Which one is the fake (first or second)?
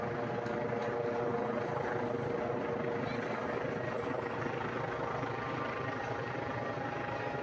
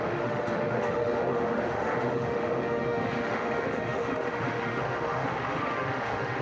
second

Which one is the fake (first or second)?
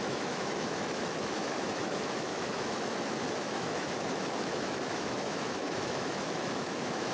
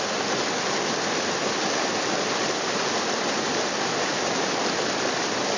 first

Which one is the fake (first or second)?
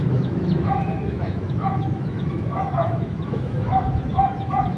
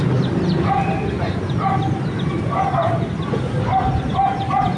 first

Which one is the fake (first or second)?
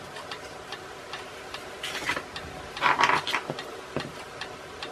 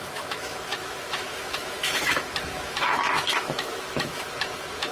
second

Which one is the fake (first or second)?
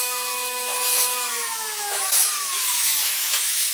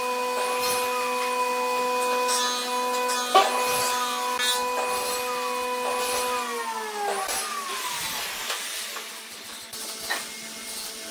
first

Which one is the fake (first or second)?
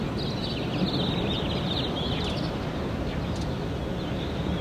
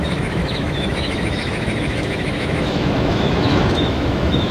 second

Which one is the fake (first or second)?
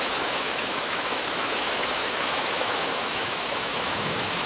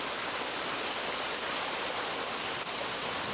first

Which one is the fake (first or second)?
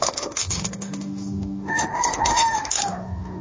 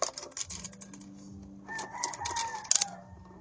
first